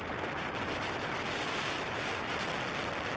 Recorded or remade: recorded